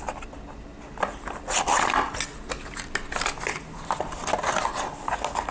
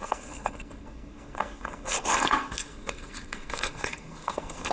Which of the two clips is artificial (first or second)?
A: second